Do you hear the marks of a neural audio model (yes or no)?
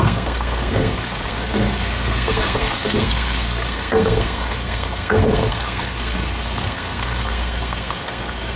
yes